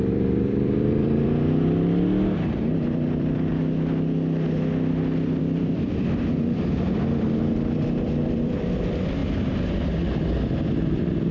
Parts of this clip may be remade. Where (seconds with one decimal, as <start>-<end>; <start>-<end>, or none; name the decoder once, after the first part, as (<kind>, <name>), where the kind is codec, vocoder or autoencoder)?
0.0-3.5 (vocoder, BigVGAN v2); 5.4-9.2; 10.7-11.3